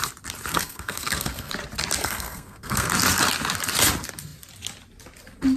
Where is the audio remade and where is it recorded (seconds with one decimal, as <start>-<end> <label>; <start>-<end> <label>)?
0.0-0.5 recorded; 0.5-1.5 remade; 1.5-2.0 recorded; 2.0-2.9 remade; 2.9-5.6 recorded